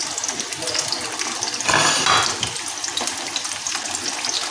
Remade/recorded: recorded